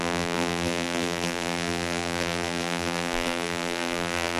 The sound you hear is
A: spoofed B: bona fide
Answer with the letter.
A